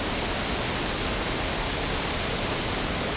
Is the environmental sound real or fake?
real